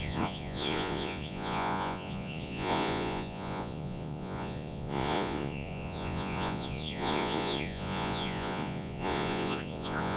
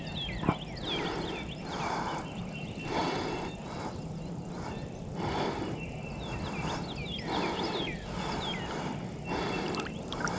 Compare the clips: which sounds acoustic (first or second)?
second